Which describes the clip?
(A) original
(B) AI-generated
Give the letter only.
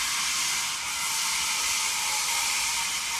A